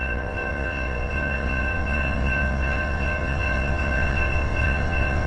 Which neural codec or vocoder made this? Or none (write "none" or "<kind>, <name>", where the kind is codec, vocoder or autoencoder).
vocoder, WaveNeXt